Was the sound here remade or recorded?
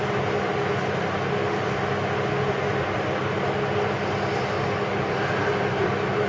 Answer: recorded